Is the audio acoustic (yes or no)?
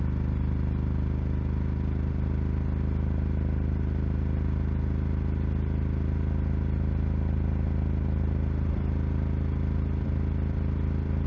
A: yes